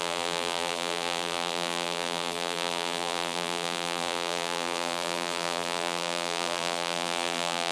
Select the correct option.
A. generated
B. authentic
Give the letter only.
A